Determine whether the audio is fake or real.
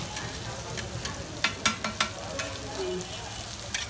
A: real